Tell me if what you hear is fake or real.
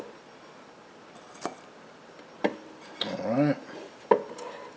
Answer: real